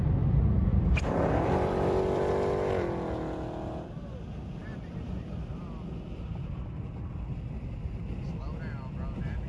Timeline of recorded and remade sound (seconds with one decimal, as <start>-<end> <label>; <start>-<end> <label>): 0.0-0.7 recorded; 0.7-2.3 remade; 2.3-9.5 recorded